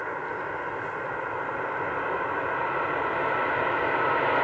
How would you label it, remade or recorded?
recorded